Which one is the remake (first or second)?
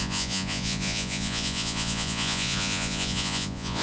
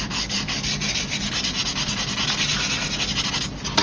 first